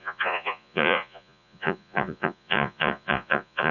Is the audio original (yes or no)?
no